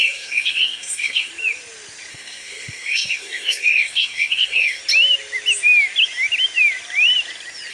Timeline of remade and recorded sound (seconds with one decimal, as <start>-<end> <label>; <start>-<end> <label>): 0.0-1.3 remade; 1.3-2.1 recorded; 2.1-4.8 remade; 4.8-7.7 recorded